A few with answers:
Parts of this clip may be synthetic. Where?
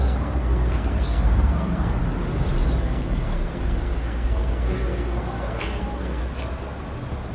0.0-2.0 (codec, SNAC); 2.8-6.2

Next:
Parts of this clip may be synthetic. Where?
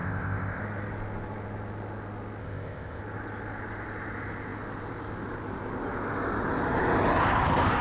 0.0-0.6 (codec, ZipCodec); 2.4-3.0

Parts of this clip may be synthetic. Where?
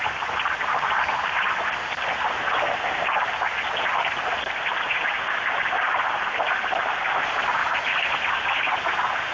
7.6-8.2 (vocoder, BigVGAN v2)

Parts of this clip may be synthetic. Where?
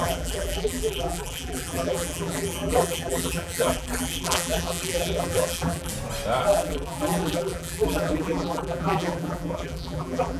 0.0-5.9 (vocoder, BigVGAN v2); 6.4-10.4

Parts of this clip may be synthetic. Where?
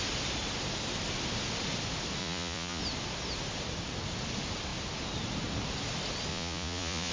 2.2-2.8 (vocoder, Vocos); 6.3-7.1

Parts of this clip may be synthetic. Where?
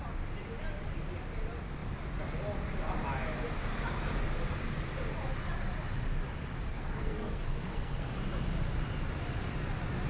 6.7-8.2 (codec, SNAC)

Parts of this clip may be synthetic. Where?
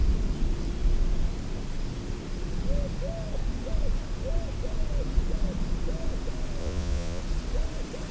6.6-7.2 (vocoder, Vocos)